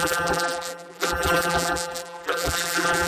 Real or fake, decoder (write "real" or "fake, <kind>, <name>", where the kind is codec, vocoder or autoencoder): fake, vocoder, BigVGAN v2